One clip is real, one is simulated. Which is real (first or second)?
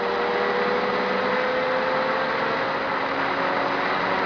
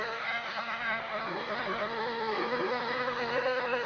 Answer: first